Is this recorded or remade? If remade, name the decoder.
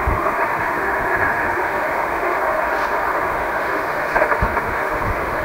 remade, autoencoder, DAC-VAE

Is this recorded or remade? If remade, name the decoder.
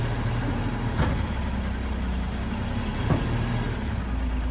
recorded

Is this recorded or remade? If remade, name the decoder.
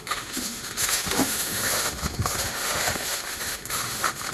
remade, autoencoder, DAC-VAE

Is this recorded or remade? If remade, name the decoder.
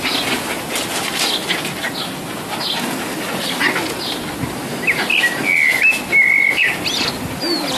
recorded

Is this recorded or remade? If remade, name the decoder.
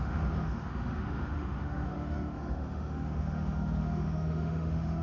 remade, autoencoder, DAC-VAE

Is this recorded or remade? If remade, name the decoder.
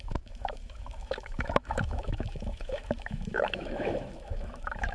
remade, autoencoder, DAC-VAE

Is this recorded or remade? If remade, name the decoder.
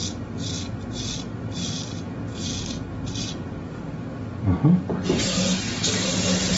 recorded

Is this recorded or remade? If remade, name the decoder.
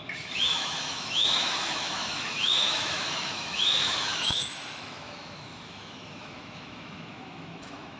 remade, autoencoder, DAC-VAE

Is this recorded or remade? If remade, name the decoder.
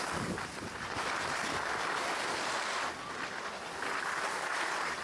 recorded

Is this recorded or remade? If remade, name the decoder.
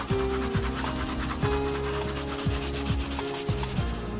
recorded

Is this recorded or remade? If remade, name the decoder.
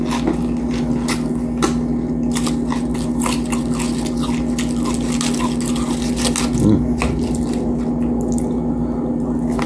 recorded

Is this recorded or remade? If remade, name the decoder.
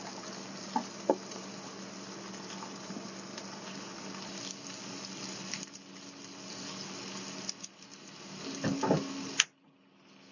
recorded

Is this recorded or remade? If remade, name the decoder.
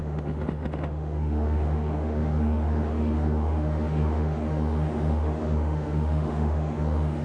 remade, autoencoder, DAC-VAE